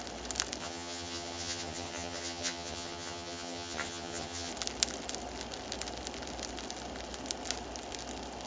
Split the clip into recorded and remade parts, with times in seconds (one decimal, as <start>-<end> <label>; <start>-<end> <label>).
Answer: 0.0-0.6 recorded; 0.6-4.5 remade; 4.5-8.5 recorded